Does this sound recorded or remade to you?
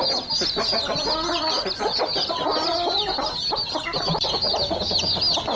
recorded